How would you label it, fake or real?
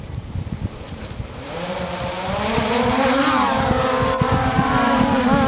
fake